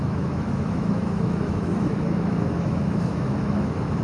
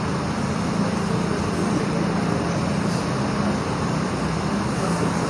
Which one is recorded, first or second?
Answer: second